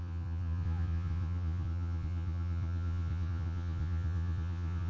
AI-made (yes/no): yes